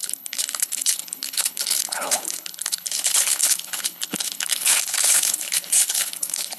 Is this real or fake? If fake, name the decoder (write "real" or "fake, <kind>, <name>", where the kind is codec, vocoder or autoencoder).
fake, codec, HILCodec